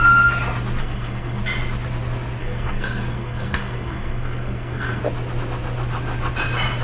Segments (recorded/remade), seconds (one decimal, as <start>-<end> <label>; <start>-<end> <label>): 0.0-0.8 recorded; 0.8-1.4 remade; 1.4-2.4 recorded; 2.4-5.0 remade; 5.0-6.8 recorded